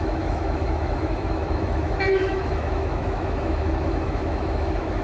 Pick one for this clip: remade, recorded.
remade